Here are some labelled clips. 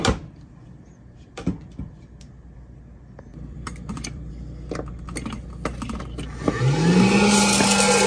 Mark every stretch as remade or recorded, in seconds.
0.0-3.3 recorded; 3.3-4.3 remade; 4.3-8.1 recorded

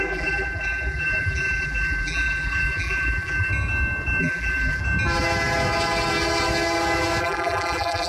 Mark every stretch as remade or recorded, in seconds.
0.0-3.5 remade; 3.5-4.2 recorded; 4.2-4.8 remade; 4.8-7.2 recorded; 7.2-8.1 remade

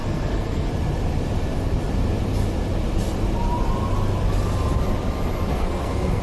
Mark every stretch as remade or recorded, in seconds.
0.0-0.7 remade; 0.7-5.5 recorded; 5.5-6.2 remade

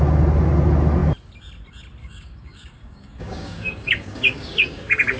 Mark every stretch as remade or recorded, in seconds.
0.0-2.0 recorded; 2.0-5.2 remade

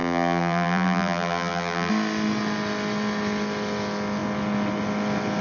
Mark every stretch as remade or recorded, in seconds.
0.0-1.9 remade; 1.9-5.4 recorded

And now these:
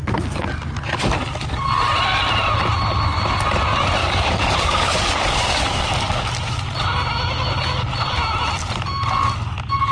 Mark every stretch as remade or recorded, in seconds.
0.0-4.0 recorded; 4.0-6.3 remade; 6.3-9.9 recorded

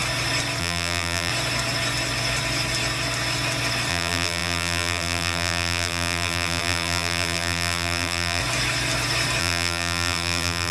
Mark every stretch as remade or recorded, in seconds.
0.0-0.6 recorded; 0.6-1.3 remade; 1.3-3.9 recorded; 3.9-8.4 remade; 8.4-9.4 recorded; 9.4-10.7 remade

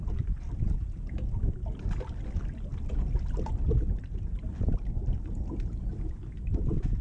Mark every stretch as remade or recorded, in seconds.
0.0-7.0 recorded